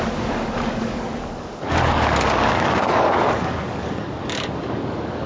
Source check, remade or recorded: remade